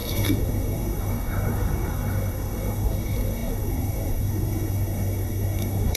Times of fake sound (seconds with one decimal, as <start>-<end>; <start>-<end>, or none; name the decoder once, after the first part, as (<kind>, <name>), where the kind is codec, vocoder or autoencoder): 0.0-6.0 (codec, SNAC)